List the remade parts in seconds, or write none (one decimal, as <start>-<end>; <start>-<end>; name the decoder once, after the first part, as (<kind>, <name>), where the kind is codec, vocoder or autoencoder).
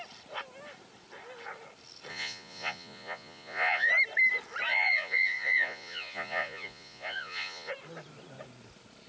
2.1-3.9 (vocoder, Vocos); 4.7-7.7